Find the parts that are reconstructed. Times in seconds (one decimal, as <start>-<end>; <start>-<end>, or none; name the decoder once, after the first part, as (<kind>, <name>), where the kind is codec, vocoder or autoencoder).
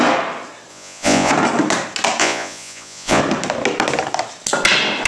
0.7-1.3 (vocoder, Vocos); 2.2-3.2